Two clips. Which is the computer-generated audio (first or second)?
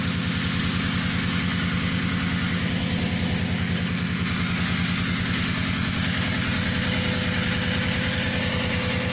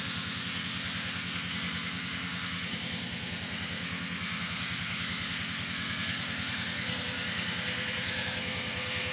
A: second